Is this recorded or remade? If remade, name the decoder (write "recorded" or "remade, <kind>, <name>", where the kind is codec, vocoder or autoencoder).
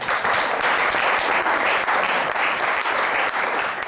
remade, vocoder, BigVGAN v2